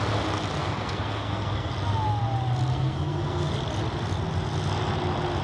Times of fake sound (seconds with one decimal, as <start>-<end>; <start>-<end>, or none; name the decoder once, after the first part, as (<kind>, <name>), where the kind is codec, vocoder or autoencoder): 0.6-1.7 (codec, SNAC); 2.7-3.5